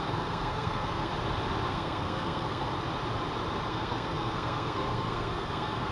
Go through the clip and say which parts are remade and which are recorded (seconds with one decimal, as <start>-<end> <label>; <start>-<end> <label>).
0.0-1.1 remade; 1.1-1.7 recorded; 1.7-2.7 remade; 2.7-3.7 recorded; 3.7-5.9 remade